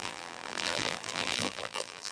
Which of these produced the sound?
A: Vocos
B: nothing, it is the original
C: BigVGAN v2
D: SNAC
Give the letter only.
C